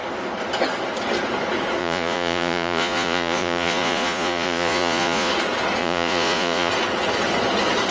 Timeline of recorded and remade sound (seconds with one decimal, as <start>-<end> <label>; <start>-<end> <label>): 0.0-1.8 recorded; 1.8-5.3 remade; 5.3-5.8 recorded; 5.8-6.7 remade; 6.7-7.9 recorded